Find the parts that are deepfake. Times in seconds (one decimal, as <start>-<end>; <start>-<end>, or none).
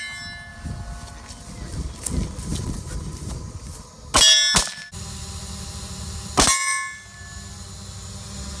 0.5-1.1; 2.5-3.9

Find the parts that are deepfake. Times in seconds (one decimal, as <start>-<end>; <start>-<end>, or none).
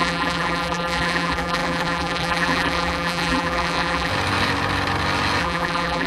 0.0-4.1; 5.4-6.1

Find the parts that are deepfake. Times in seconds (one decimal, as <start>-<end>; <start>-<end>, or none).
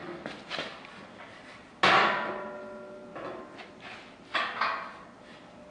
none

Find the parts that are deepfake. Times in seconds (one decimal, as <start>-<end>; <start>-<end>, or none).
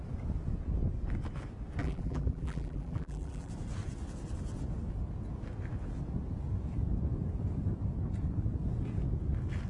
1.8-3.5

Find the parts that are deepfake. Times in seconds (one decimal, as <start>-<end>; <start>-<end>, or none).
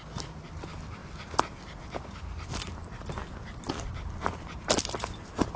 none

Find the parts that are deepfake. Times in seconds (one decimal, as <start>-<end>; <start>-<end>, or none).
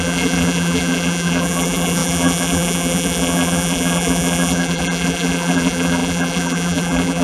0.0-7.2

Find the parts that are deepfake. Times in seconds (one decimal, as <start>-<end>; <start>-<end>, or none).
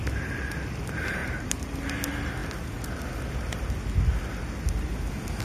1.2-1.7